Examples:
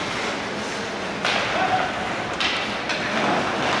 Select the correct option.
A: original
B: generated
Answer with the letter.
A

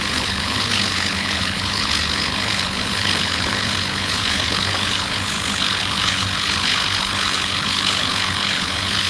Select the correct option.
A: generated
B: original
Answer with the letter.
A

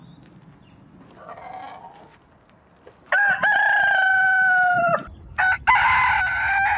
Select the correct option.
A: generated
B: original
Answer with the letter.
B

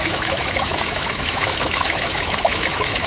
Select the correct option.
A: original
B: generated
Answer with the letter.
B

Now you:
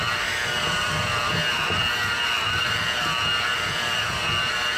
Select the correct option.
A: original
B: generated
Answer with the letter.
A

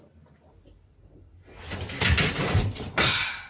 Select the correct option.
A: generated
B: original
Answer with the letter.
B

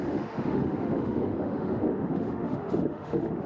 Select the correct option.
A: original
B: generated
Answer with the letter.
B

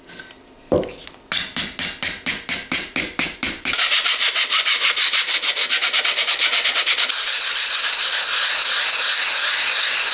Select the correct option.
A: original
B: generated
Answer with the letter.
A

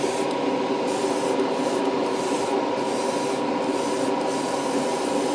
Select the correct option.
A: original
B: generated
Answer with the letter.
A